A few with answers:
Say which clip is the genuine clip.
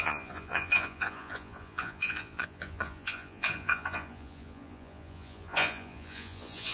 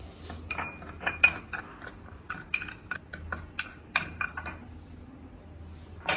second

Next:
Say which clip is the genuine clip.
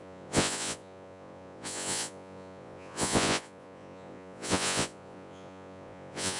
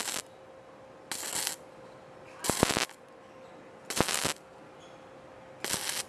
second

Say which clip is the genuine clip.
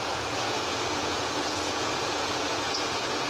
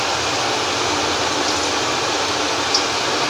second